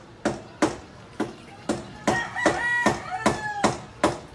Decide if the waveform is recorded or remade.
recorded